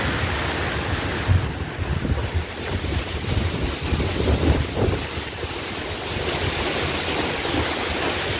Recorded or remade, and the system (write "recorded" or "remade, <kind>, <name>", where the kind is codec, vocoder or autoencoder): recorded